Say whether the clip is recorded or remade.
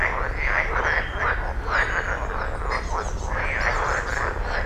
recorded